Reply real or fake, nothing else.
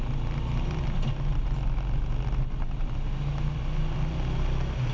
real